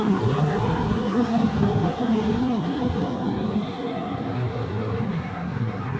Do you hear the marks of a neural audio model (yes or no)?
yes